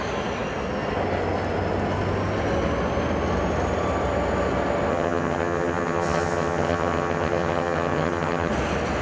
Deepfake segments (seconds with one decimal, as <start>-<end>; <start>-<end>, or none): 4.9-8.5

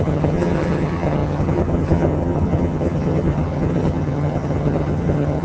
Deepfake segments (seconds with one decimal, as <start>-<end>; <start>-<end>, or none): 0.0-5.4

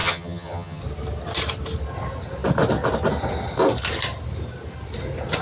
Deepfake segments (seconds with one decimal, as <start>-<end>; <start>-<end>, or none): 0.0-0.8

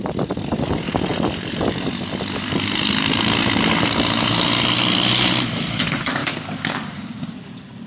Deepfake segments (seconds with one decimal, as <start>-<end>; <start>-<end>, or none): none